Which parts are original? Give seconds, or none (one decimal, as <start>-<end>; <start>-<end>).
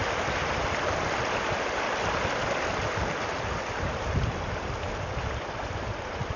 0.0-6.4